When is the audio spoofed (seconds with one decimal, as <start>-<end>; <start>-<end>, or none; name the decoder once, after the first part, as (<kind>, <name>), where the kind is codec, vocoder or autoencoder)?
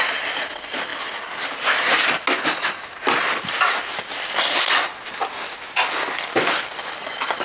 3.9-7.0 (vocoder, BigVGAN v2)